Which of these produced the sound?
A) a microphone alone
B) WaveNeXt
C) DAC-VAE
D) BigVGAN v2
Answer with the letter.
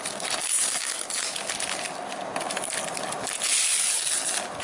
A